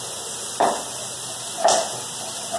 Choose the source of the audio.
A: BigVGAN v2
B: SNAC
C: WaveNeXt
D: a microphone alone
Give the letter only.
D